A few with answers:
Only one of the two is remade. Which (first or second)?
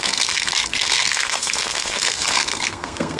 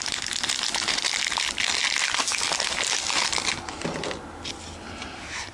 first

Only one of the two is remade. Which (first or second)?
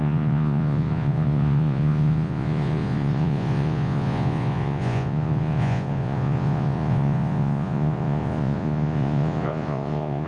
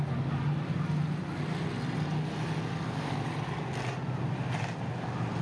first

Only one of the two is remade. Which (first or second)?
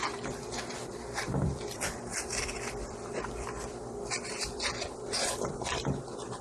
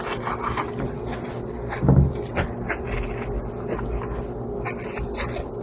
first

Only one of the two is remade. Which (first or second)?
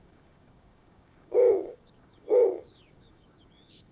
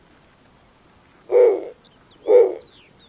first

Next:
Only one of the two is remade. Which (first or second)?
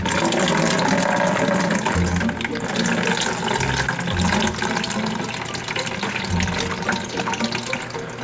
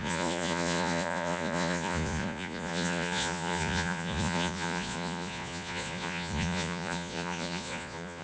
second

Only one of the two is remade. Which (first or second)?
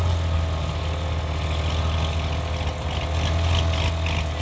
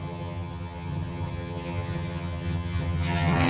second